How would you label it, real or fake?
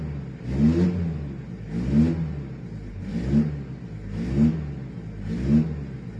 real